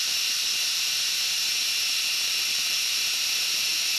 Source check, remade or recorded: remade